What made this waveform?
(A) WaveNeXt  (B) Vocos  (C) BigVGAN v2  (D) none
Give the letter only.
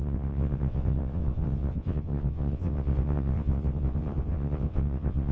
A